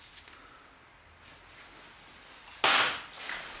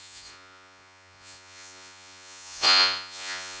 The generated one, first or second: second